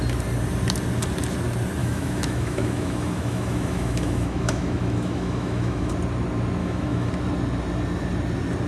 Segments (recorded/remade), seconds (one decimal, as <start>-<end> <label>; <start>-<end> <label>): 0.0-1.8 recorded; 1.8-5.9 remade; 5.9-6.6 recorded; 6.6-7.1 remade; 7.1-8.7 recorded